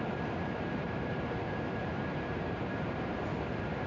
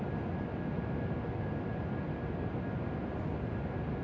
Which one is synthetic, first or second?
first